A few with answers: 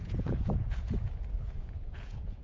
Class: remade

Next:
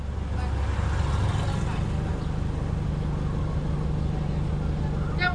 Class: recorded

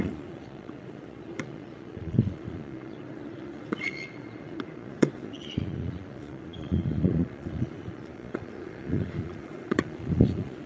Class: remade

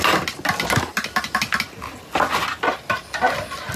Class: recorded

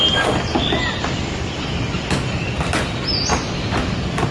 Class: recorded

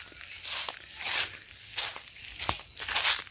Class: recorded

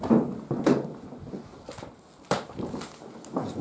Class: recorded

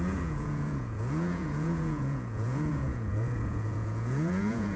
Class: remade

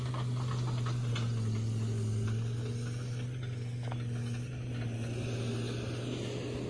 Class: recorded